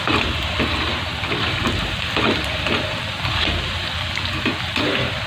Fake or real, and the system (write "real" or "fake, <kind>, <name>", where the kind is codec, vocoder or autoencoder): real